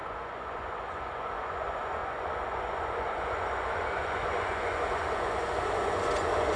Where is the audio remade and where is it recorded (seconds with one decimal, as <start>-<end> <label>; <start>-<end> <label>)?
0.0-6.6 remade

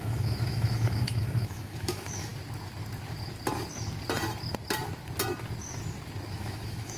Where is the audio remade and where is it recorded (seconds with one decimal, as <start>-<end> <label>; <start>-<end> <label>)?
0.0-2.3 remade; 2.3-6.4 recorded; 6.4-7.0 remade

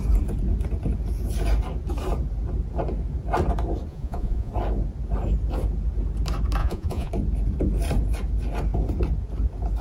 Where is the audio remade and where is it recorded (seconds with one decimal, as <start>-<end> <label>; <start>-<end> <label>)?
0.0-3.9 recorded; 3.9-4.5 remade; 4.5-6.6 recorded; 6.6-7.1 remade; 7.1-9.8 recorded

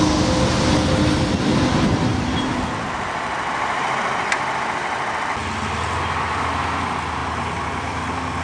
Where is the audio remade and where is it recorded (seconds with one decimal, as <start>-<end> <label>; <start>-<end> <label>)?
0.0-2.1 recorded; 2.1-3.9 remade; 3.9-8.4 recorded

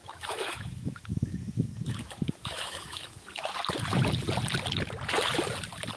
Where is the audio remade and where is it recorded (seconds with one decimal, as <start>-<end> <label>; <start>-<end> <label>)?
0.0-3.6 remade; 3.6-6.0 recorded

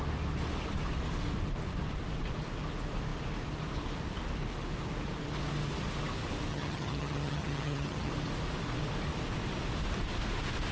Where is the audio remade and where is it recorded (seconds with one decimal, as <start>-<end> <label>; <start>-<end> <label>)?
0.0-6.5 recorded; 6.5-8.1 remade; 8.1-10.7 recorded

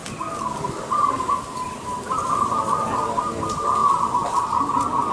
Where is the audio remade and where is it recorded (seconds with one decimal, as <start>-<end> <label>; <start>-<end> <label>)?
0.0-5.1 recorded

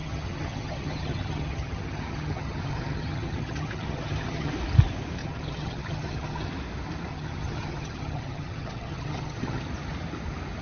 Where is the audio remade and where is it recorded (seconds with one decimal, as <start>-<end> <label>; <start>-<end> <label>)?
0.0-4.5 remade; 4.5-5.2 recorded; 5.2-6.5 remade; 6.5-7.1 recorded; 7.1-9.6 remade; 9.6-10.6 recorded